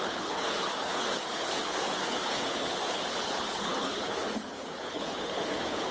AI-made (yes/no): yes